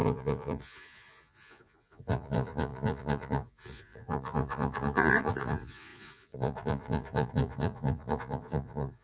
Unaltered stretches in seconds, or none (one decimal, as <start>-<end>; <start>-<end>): none